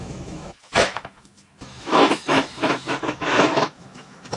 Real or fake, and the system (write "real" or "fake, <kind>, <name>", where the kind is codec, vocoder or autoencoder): fake, autoencoder, DAC-VAE